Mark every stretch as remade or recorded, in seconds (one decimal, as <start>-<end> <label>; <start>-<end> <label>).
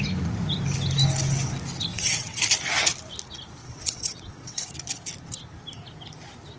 0.0-1.9 recorded; 1.9-2.4 remade; 2.4-3.6 recorded; 3.6-4.7 remade; 4.7-6.6 recorded